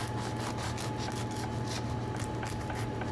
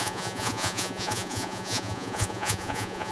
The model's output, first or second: second